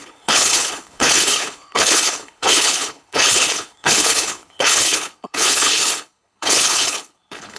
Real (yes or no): no